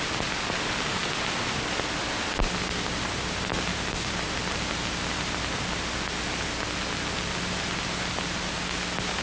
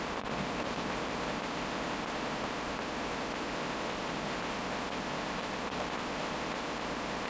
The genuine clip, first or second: first